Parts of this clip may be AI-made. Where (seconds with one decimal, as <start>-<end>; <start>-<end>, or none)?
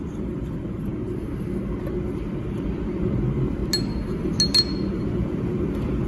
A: 0.0-0.9; 1.8-3.6; 5.0-6.1